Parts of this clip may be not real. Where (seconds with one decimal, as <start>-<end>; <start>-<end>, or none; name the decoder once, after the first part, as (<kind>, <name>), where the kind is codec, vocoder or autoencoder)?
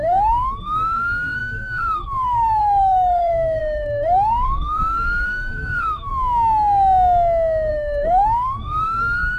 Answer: 0.0-6.1 (codec, SNAC); 7.7-9.4